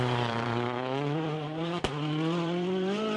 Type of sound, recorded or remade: remade